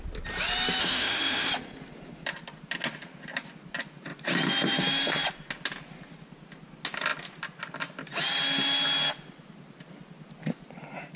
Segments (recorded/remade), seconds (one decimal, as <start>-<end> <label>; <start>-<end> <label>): 0.0-0.8 recorded; 0.8-1.5 remade; 1.5-11.2 recorded